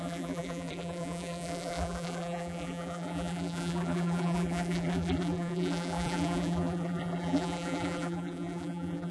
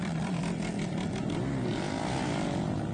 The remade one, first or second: first